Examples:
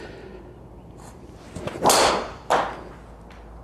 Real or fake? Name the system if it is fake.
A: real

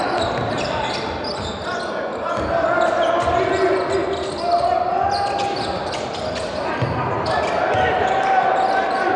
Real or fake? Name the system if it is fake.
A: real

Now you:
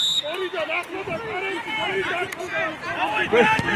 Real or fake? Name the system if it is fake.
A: real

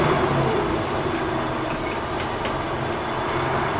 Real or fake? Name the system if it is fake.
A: real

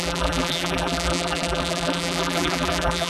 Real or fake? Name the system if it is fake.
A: fake, vocoder, BigVGAN v2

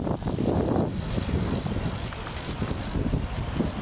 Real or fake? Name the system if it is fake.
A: real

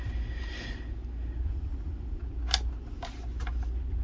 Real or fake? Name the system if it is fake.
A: real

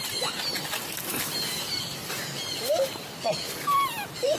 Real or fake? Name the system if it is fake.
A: real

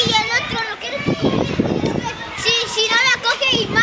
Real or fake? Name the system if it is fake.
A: fake, vocoder, BigVGAN v2